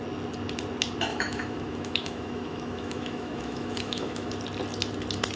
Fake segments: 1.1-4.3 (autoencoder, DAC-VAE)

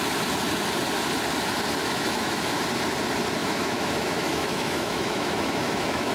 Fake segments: 1.8-2.6 (autoencoder, DAC-VAE); 3.4-6.1

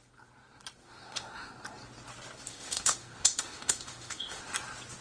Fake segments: 0.8-1.5 (autoencoder, DAC-VAE); 2.5-4.4

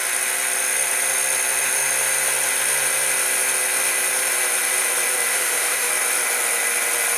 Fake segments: 5.3-5.9 (autoencoder, DAC-VAE)

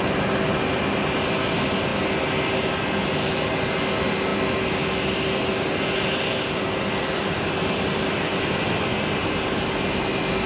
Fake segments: none

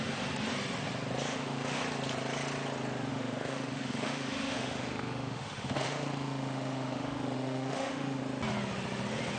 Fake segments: 1.3-1.8 (autoencoder, DAC-VAE); 3.1-8.2

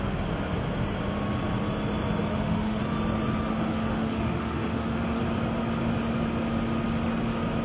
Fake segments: 2.3-2.8 (autoencoder, DAC-VAE); 3.5-5.2